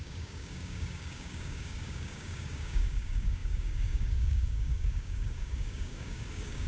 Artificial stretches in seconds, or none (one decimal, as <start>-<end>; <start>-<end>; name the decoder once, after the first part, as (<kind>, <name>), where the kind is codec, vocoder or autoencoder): 0.0-6.7 (codec, DAC)